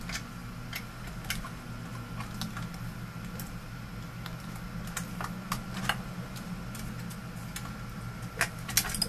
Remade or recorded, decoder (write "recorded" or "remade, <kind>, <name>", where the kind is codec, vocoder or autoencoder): recorded